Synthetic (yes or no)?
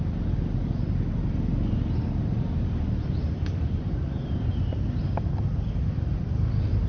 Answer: no